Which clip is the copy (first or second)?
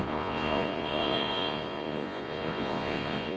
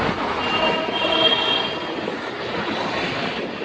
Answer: first